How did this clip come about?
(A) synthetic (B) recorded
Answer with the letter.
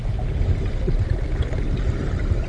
B